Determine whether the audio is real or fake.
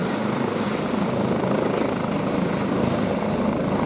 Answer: real